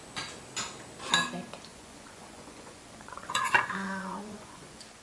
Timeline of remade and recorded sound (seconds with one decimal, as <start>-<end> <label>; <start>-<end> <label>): 0.0-1.7 recorded; 1.7-5.0 remade